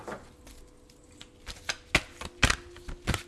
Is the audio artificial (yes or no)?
no